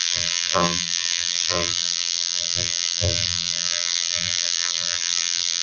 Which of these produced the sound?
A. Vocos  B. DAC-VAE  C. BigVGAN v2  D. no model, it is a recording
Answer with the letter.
C